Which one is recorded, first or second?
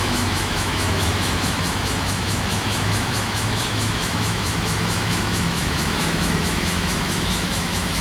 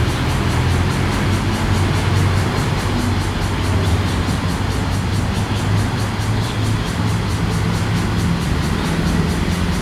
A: second